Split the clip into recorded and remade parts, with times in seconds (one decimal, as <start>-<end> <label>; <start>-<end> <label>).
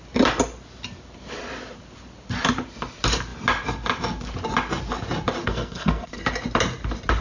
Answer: 0.0-5.4 recorded; 5.4-6.2 remade; 6.2-7.2 recorded